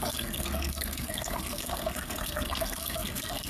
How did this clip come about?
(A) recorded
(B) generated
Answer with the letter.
B